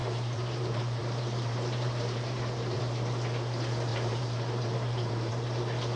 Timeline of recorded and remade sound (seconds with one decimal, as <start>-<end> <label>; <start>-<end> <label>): 0.0-2.8 remade; 2.8-3.9 recorded; 3.9-5.3 remade; 5.3-6.0 recorded